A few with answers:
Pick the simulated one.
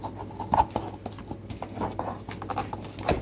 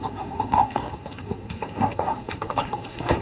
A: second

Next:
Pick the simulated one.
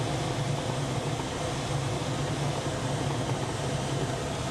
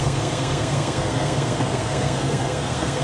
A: second